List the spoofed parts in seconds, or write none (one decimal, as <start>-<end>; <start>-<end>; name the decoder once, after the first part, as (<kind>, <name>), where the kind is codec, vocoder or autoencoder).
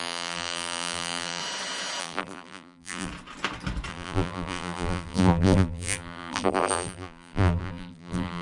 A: 0.0-1.4 (vocoder, BigVGAN v2); 2.0-3.1; 3.9-8.4